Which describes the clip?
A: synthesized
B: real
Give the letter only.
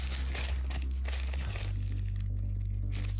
B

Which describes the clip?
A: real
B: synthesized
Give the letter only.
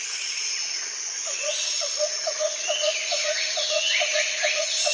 B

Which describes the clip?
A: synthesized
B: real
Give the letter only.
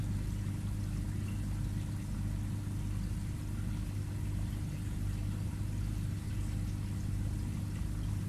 B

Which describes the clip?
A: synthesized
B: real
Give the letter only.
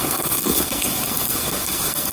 A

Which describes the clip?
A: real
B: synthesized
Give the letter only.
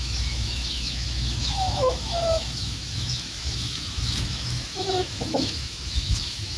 B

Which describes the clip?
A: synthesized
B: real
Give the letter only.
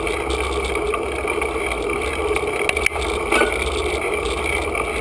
B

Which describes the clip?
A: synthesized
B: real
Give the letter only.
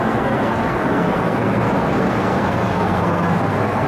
A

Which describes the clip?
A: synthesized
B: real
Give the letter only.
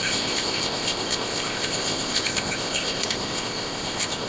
A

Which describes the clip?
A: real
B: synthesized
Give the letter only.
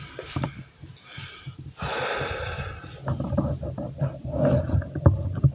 A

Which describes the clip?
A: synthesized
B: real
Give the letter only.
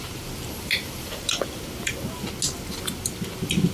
B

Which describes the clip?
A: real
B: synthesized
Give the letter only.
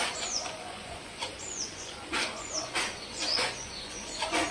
B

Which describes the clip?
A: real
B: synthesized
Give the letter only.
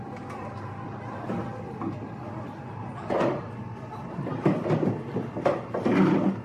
A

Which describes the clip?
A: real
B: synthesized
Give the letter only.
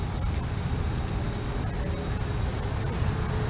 A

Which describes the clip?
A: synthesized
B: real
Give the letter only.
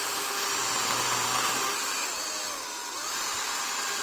B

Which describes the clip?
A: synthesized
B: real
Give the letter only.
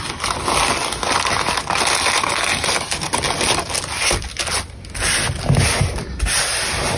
B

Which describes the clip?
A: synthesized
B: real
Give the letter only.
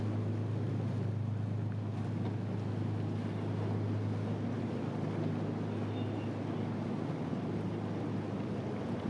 B